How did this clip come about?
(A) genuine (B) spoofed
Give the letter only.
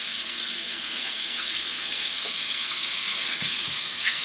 B